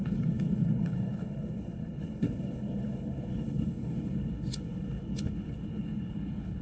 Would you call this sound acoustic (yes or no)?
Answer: no